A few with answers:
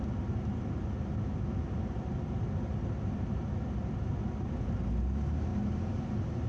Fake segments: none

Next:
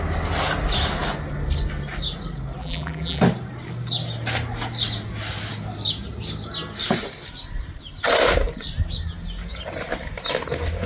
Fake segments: 2.6-3.2 (vocoder, BigVGAN v2)

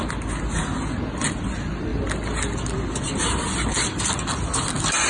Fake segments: none

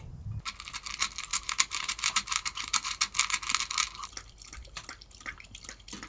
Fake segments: 1.3-3.0 (vocoder, BigVGAN v2)